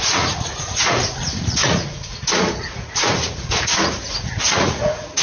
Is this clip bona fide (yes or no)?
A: no